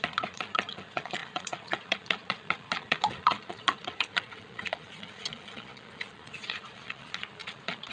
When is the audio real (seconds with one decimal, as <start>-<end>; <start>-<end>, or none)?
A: none